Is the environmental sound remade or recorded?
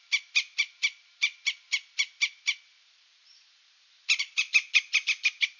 remade